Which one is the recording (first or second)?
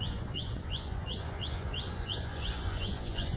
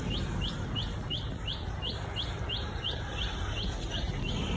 second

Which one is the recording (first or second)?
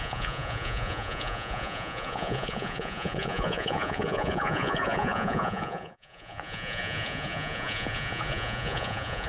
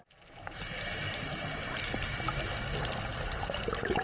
second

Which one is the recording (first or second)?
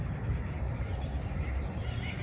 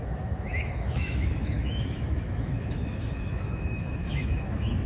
first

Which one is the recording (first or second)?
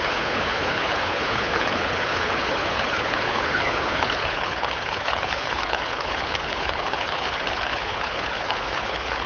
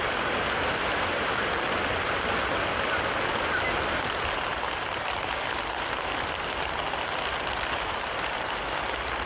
second